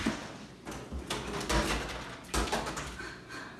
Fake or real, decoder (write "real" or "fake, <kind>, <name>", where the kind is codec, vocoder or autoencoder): real